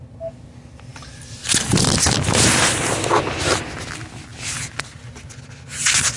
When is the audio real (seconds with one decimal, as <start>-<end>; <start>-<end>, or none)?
0.0-6.2